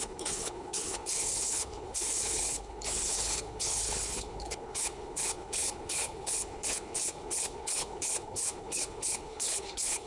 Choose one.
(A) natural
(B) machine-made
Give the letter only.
B